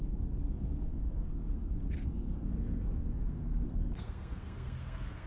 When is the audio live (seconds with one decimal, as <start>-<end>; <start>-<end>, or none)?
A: none